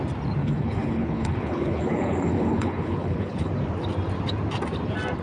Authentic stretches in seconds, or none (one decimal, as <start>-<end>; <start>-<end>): 0.0-0.4; 3.5-5.2

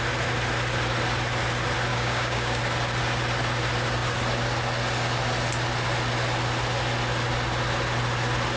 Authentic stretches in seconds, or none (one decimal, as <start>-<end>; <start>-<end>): 0.0-1.9; 2.6-8.6

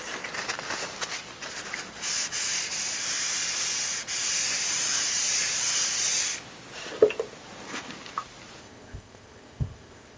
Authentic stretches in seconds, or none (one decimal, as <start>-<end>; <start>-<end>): 0.0-8.6

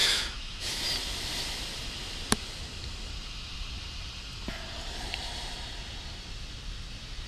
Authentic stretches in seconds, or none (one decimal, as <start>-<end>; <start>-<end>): 0.8-7.3